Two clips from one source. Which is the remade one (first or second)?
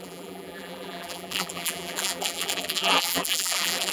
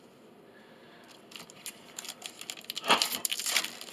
first